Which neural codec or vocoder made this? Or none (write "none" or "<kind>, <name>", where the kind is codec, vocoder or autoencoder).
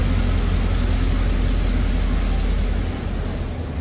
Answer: none